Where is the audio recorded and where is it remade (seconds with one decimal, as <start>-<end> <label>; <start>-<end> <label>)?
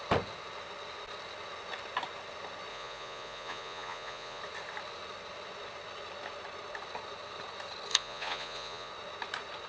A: 0.0-2.7 recorded; 2.7-4.4 remade; 4.4-7.9 recorded; 7.9-8.9 remade; 8.9-9.7 recorded